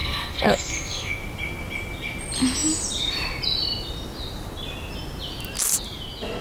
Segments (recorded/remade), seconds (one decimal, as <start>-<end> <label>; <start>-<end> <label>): 0.0-1.2 remade; 1.2-6.4 recorded